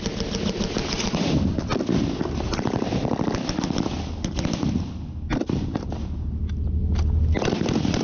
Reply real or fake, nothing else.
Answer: real